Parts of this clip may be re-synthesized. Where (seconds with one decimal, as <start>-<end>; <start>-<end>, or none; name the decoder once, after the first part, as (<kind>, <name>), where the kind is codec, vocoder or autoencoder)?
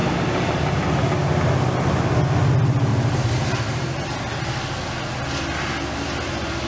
2.9-4.1 (vocoder, BigVGAN v2)